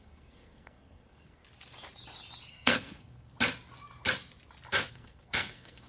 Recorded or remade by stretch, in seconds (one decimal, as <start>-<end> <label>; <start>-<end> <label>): 0.0-1.4 remade; 1.4-2.5 recorded; 2.5-3.3 remade; 3.3-4.9 recorded; 4.9-5.9 remade